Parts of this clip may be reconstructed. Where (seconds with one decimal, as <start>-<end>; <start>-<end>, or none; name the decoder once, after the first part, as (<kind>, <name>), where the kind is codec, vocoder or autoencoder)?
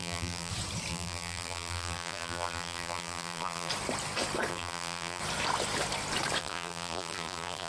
0.0-0.5 (vocoder, BigVGAN v2); 0.9-3.7; 4.5-5.2; 6.4-7.7